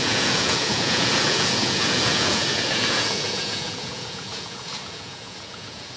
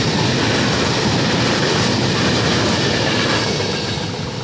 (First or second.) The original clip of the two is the second